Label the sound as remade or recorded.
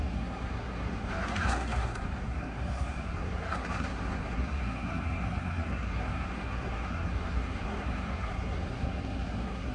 remade